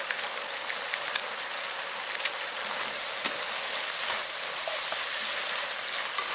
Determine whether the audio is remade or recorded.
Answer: remade